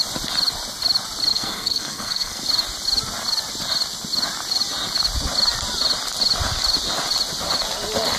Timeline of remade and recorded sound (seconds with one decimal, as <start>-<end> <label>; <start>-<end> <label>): 0.0-1.3 recorded; 1.3-2.4 remade; 2.4-8.2 recorded